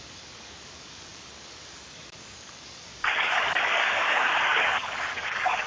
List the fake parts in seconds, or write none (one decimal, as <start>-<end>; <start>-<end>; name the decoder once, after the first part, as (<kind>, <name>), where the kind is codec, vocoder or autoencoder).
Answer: 0.0-5.7 (codec, DAC)